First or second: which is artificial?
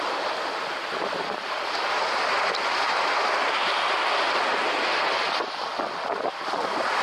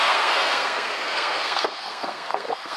second